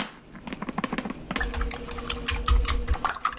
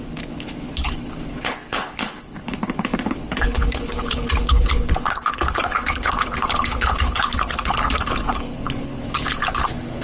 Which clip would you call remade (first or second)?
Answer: second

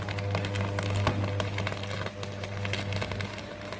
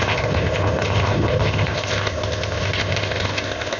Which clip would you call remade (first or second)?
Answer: second